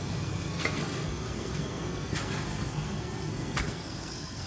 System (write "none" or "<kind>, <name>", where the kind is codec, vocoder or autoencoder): codec, SNAC